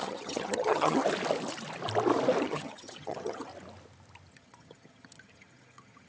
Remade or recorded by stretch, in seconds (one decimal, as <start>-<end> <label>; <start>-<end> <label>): 0.0-1.0 remade; 1.0-2.4 recorded; 2.4-3.5 remade; 3.5-4.3 recorded; 4.3-6.1 remade